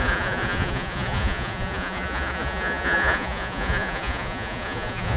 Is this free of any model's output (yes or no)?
no